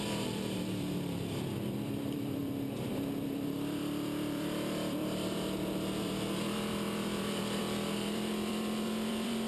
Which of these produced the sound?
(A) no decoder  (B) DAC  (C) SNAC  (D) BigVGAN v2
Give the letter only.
D